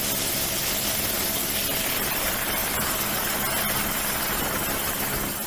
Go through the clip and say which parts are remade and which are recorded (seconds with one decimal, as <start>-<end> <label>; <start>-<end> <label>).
0.0-5.5 recorded